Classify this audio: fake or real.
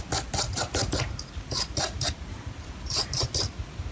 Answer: real